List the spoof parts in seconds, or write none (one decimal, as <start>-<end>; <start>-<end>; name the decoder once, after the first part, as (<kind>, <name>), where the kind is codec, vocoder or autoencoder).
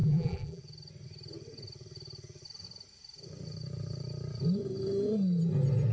0.0-0.6 (vocoder, BigVGAN v2)